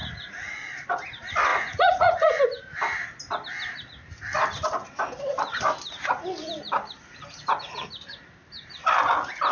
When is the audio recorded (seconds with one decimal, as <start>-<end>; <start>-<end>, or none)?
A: 0.7-1.5; 2.4-9.5